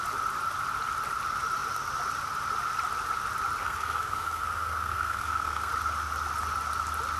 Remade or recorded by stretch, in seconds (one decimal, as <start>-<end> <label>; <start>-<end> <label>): 0.0-3.6 recorded; 3.6-5.7 remade; 5.7-7.2 recorded